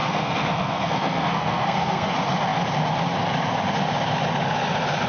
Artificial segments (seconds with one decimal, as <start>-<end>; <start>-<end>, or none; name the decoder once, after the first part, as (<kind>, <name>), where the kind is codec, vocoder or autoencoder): 0.0-2.1 (codec, SNAC)